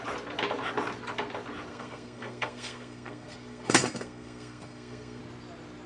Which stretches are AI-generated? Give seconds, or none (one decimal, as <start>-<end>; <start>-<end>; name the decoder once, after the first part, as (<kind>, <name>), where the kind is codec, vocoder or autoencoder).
1.7-5.2 (codec, SNAC)